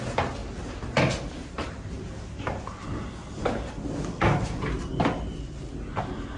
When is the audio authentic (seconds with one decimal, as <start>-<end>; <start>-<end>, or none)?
0.0-6.4